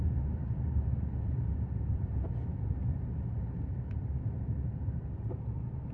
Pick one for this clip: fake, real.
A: fake